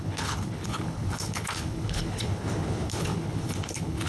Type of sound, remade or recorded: remade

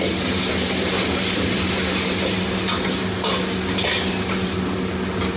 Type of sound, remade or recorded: recorded